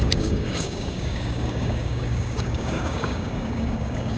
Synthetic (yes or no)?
yes